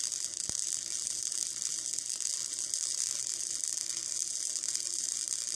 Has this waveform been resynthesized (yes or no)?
no